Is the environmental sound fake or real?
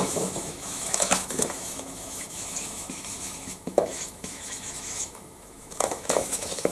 fake